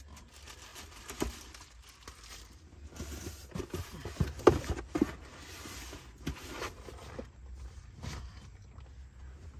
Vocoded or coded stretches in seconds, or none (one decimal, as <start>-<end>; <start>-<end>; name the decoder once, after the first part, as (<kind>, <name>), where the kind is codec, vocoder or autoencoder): none